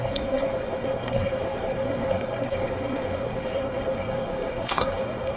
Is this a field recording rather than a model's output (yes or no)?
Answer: no